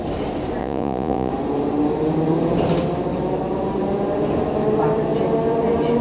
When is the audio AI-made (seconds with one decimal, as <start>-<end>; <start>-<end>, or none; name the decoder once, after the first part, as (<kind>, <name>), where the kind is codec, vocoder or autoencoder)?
0.6-1.3 (vocoder, Vocos)